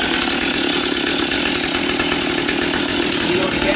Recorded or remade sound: recorded